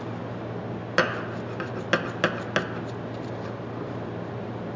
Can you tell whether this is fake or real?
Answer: real